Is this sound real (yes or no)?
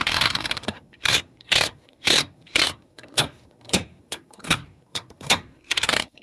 no